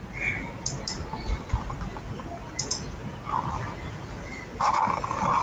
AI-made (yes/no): no